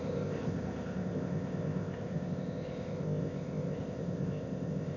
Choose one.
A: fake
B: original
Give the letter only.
A